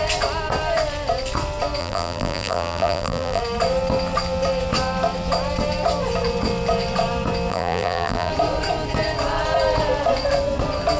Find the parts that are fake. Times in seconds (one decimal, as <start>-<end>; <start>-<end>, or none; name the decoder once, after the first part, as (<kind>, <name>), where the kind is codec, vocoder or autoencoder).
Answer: 1.8-3.4 (vocoder, BigVGAN v2); 7.5-8.3